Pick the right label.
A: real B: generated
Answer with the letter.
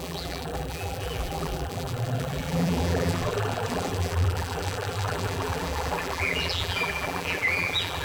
B